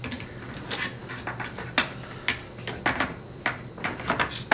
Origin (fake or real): real